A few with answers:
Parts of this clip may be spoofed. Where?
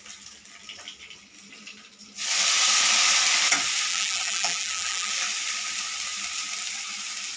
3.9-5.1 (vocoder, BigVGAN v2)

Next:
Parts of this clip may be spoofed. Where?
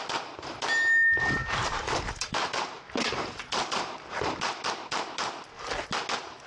1.4-4.7 (vocoder, BigVGAN v2)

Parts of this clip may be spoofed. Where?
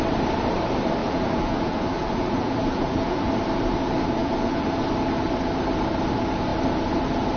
1.0-3.3 (vocoder, BigVGAN v2); 4.2-4.9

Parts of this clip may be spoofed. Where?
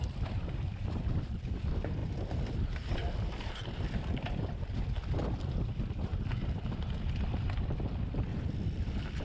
0.0-6.1 (vocoder, BigVGAN v2); 7.1-9.2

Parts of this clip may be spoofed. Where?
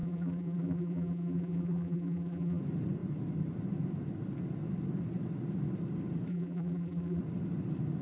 0.0-2.6 (vocoder, BigVGAN v2); 6.3-7.2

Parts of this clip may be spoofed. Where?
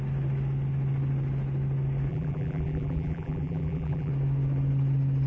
2.1-4.1 (vocoder, BigVGAN v2)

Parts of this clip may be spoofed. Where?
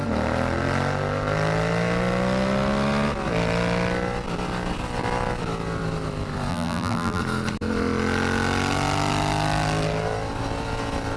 6.5-7.2 (vocoder, BigVGAN v2)